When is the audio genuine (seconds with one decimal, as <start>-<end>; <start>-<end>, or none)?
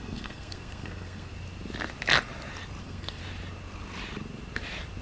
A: 1.3-2.8; 3.2-5.0